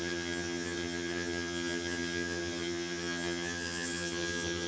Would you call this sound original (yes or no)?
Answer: no